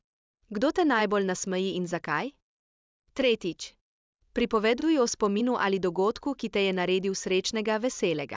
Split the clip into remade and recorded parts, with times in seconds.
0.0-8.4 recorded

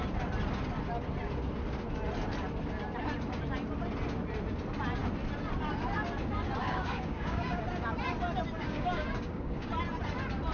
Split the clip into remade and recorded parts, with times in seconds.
0.0-6.6 recorded; 6.6-7.6 remade; 7.6-8.6 recorded; 8.6-9.7 remade; 9.7-10.5 recorded

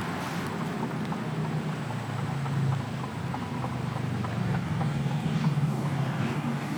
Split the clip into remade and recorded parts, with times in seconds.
0.0-4.4 recorded; 4.4-6.8 remade

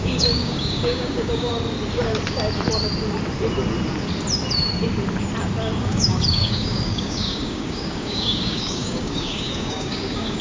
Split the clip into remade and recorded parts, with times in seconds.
0.0-1.5 remade; 1.5-5.8 recorded; 5.8-10.4 remade

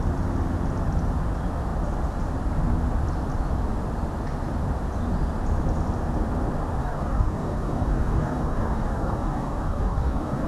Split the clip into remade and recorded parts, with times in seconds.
0.0-6.8 recorded; 6.8-10.5 remade